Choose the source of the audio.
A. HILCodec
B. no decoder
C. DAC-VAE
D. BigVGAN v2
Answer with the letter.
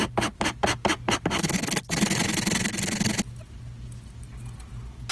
B